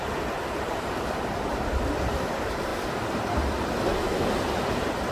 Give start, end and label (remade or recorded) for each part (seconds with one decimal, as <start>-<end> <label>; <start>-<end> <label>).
0.0-2.7 remade; 2.7-4.4 recorded; 4.4-5.1 remade